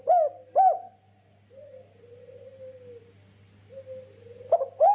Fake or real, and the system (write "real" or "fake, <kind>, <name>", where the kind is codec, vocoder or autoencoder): real